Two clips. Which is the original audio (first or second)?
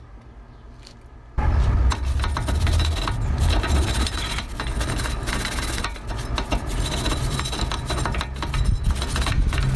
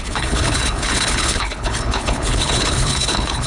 first